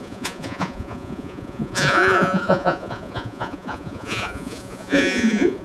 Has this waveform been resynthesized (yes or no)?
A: yes